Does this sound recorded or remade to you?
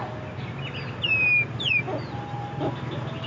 recorded